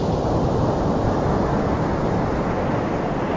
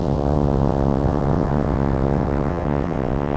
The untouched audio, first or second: first